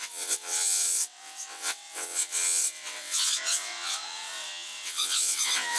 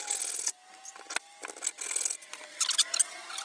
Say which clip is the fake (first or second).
first